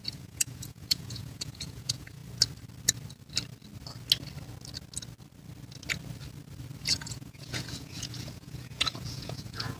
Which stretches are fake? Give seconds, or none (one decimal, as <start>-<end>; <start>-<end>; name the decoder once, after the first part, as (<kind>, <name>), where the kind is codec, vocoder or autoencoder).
0.0-2.2 (vocoder, Vocos); 6.8-9.8